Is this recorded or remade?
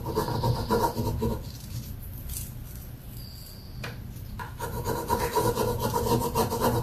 recorded